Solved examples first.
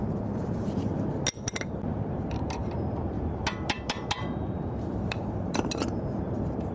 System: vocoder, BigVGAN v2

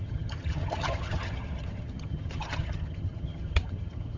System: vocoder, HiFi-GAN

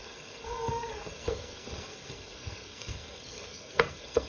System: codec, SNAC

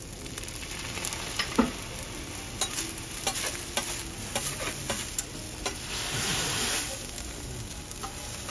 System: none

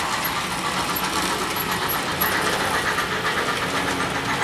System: none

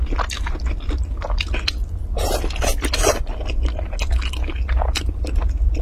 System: none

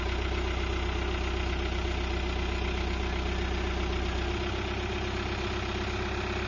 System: none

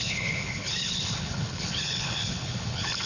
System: codec, HILCodec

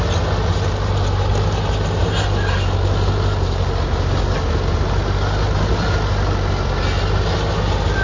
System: none